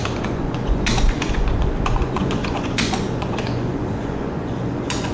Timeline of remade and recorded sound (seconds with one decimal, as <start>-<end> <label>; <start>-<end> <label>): 0.0-5.1 remade